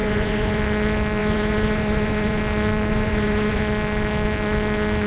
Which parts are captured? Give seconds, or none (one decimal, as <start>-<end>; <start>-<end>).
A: 0.6-1.2; 2.4-2.9; 3.6-5.1

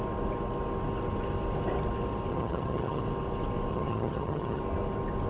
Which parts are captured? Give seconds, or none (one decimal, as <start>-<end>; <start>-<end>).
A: 0.0-2.3; 3.0-3.7; 4.6-5.3